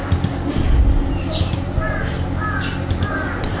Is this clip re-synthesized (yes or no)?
no